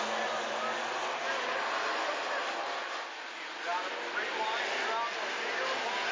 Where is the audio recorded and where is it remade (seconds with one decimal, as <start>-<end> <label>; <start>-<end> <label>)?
0.0-6.1 recorded